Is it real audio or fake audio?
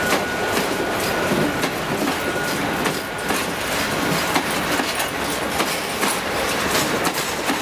real